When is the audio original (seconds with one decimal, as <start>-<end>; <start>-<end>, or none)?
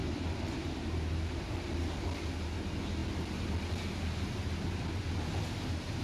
1.4-6.0